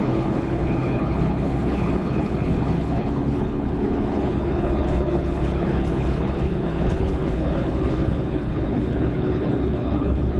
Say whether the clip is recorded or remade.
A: remade